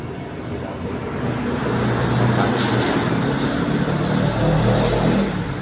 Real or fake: real